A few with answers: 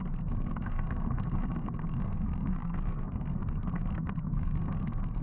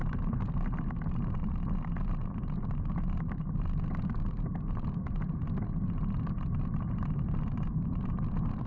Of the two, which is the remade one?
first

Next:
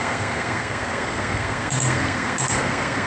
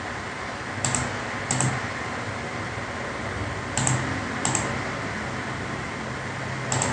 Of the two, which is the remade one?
first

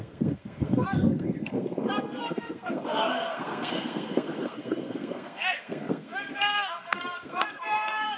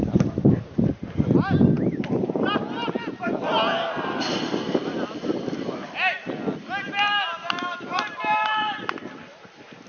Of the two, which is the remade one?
first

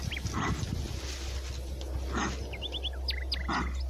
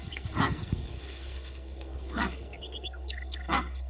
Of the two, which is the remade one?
second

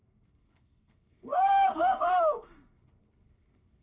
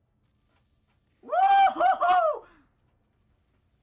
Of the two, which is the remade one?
first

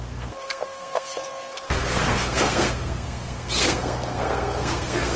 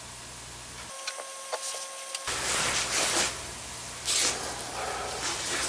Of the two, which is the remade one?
first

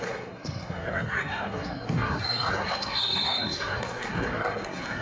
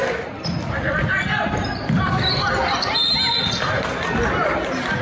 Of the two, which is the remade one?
first